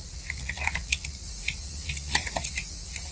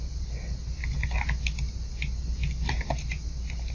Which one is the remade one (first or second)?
first